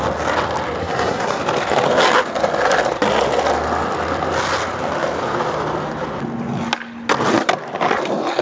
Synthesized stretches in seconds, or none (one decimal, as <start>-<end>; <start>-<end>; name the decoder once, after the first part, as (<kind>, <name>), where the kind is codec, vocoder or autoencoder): 0.8-1.4 (codec, SNAC)